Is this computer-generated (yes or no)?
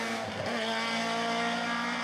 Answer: no